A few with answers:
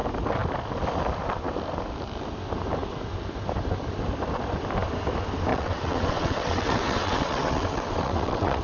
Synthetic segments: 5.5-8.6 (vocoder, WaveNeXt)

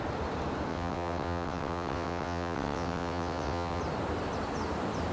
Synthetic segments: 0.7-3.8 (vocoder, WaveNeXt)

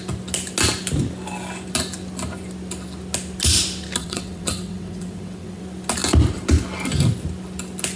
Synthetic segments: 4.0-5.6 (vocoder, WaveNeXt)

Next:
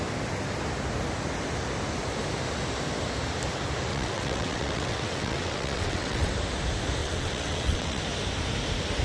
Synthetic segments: 3.9-6.3 (vocoder, WaveNeXt); 7.0-8.0

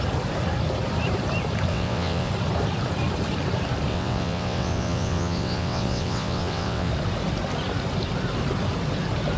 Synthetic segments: 1.7-2.3 (vocoder, WaveNeXt); 3.9-6.9